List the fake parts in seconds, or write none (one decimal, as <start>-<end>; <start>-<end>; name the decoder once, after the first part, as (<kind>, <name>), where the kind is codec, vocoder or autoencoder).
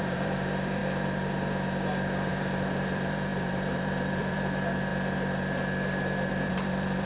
0.0-0.8 (vocoder, BigVGAN v2); 2.3-4.9; 6.3-7.1